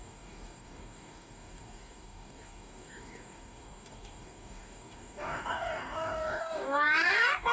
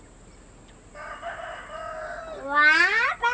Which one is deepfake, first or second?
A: first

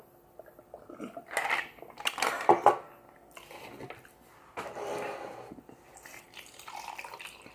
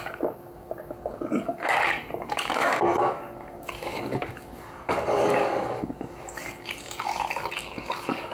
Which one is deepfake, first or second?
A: second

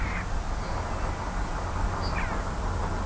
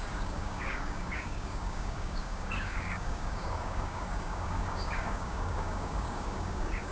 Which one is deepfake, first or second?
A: second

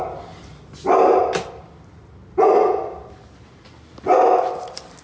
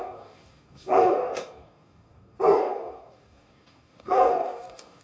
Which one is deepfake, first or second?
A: second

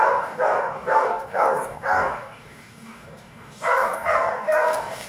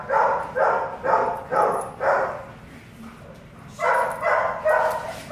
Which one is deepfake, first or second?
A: first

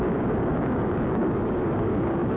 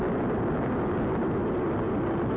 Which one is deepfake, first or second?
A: first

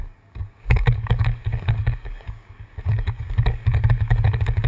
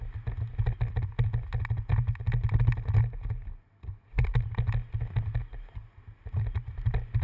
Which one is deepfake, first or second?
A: first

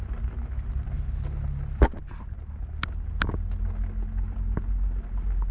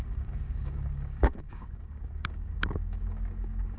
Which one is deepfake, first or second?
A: second